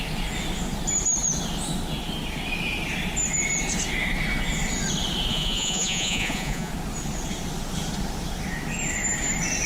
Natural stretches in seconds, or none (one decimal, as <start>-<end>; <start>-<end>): 0.0-5.3; 6.7-9.7